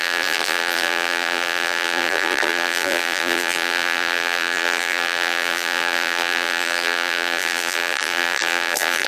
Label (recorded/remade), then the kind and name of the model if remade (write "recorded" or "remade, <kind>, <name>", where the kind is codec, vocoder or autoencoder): remade, vocoder, BigVGAN v2